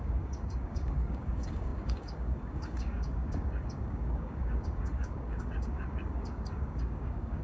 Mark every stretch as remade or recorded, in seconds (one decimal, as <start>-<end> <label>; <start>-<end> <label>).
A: 0.0-7.4 remade